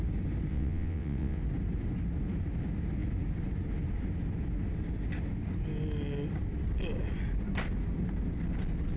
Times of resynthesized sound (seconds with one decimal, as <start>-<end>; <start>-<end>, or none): 0.5-1.4